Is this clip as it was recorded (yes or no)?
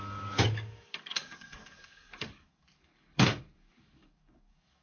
no